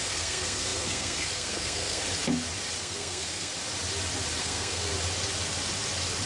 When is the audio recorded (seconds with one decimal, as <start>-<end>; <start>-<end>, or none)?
2.0-2.8; 3.5-4.4; 4.9-6.3